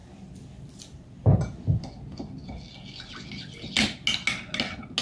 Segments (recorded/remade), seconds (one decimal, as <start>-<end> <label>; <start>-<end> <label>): 0.0-5.0 recorded